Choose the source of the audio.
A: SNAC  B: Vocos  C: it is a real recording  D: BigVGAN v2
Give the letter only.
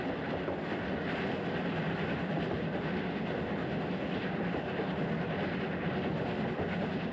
C